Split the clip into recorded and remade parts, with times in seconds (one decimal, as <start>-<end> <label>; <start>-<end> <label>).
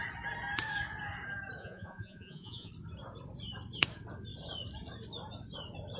0.0-1.6 recorded; 1.6-2.7 remade; 2.7-6.0 recorded